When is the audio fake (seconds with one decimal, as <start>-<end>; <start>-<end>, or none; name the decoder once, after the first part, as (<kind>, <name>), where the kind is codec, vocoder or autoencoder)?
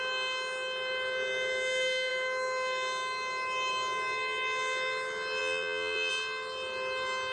5.4-6.1 (vocoder, BigVGAN v2)